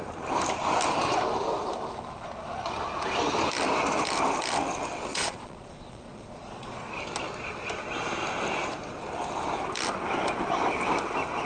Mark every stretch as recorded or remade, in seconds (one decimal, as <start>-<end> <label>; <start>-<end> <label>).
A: 0.0-5.1 recorded; 5.1-6.9 remade; 6.9-11.5 recorded